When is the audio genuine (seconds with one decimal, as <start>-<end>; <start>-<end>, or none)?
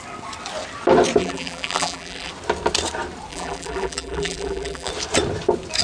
0.0-1.2; 2.3-3.3; 4.9-5.8